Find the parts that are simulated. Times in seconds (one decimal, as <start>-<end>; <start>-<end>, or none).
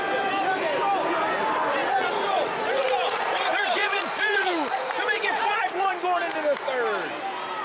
1.8-5.9